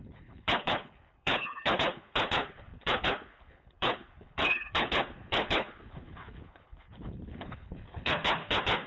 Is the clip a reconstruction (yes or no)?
yes